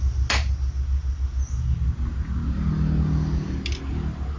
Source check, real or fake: real